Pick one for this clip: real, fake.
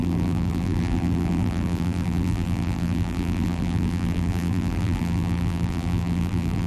fake